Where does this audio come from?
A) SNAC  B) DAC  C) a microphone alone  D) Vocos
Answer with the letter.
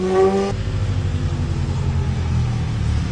C